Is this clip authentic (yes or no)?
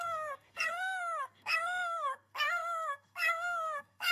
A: no